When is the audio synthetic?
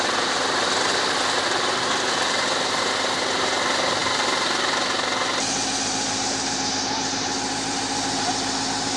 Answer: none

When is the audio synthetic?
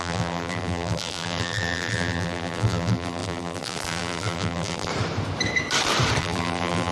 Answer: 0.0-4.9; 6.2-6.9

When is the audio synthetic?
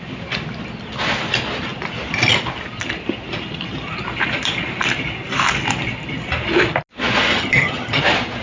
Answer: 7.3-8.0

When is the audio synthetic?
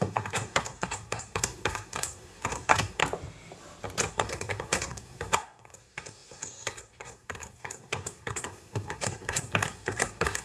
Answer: 0.0-3.0; 4.1-10.4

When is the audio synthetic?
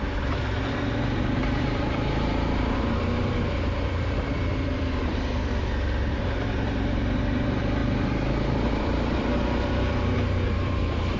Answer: 0.0-5.5; 6.1-11.2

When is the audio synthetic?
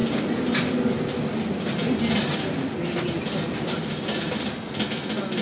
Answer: none